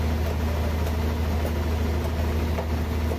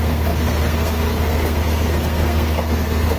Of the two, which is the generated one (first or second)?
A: second